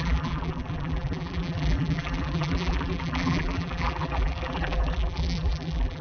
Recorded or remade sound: remade